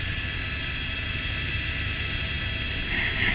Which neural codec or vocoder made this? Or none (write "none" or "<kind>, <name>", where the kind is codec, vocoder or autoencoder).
none